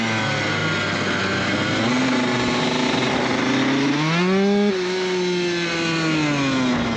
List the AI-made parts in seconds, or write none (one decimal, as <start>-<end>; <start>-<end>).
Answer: none